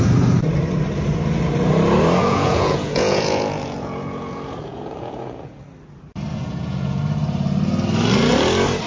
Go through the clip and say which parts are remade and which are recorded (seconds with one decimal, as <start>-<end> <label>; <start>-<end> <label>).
0.0-2.2 recorded; 2.2-5.6 remade; 5.6-6.3 recorded; 6.3-7.0 remade; 7.0-8.9 recorded